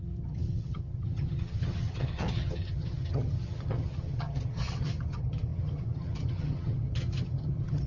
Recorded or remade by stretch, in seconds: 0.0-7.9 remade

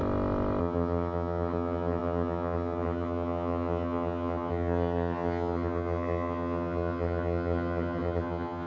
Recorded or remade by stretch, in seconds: 0.0-0.6 recorded; 0.6-8.7 remade